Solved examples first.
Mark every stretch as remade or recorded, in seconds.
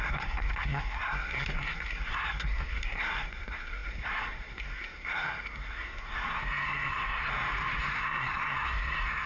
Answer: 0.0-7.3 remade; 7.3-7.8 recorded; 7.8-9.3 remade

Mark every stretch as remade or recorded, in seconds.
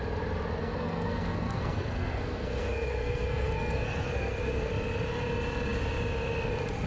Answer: 0.0-0.6 recorded; 0.6-4.7 remade; 4.7-6.9 recorded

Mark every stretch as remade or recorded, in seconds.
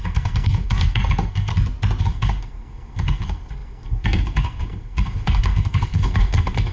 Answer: 0.0-1.5 remade; 1.5-2.0 recorded; 2.0-6.7 remade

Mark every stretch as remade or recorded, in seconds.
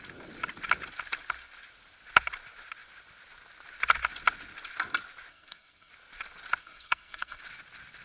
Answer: 0.0-5.3 recorded; 5.3-5.9 remade; 5.9-6.6 recorded; 6.6-7.4 remade; 7.4-8.0 recorded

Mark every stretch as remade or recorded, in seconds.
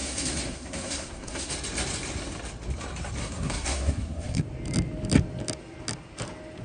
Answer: 0.0-1.5 remade; 1.5-3.2 recorded; 3.2-4.4 remade; 4.4-6.6 recorded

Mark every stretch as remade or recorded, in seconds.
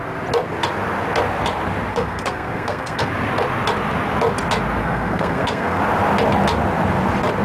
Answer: 0.0-1.9 recorded; 1.9-3.1 remade; 3.1-4.8 recorded; 4.8-5.8 remade; 5.8-7.4 recorded